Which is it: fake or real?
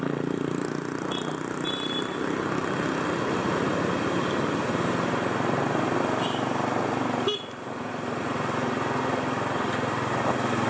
real